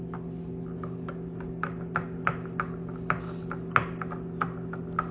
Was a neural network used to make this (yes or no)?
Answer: no